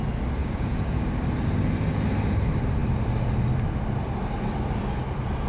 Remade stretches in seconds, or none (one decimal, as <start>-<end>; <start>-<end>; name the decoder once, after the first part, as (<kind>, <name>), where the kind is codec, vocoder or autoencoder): 0.4-1.0 (vocoder, Vocos)